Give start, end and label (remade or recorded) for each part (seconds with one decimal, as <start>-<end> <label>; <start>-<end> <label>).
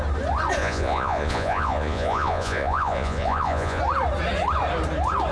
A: 0.0-0.6 recorded; 0.6-3.8 remade; 3.8-5.3 recorded